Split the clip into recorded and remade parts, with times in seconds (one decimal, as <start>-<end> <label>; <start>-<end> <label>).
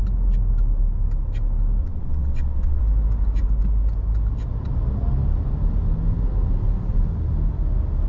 0.0-1.8 recorded; 1.8-2.8 remade; 2.8-8.1 recorded